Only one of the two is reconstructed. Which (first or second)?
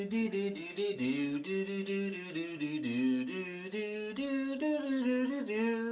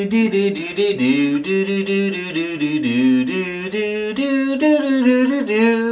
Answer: first